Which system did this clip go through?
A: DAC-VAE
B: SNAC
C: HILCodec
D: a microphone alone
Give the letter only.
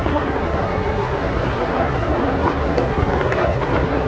B